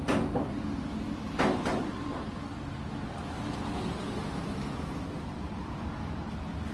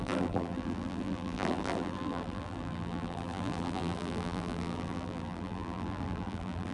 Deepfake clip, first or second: second